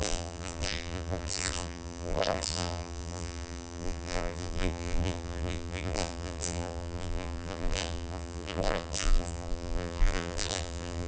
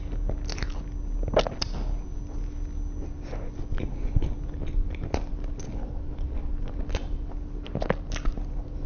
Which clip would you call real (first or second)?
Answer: second